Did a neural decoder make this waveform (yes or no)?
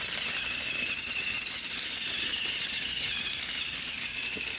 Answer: no